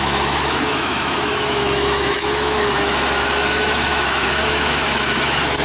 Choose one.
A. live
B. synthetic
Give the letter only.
B